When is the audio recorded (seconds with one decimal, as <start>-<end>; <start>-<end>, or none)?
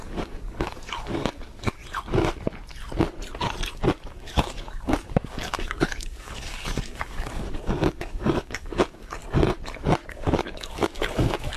1.8-4.1; 9.2-10.1